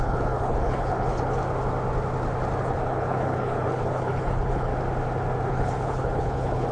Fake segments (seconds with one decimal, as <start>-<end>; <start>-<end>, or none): 0.0-1.4; 2.6-4.7; 5.5-6.7